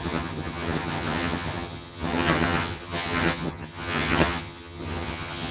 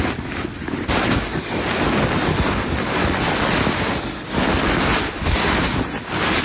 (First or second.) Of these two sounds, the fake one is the first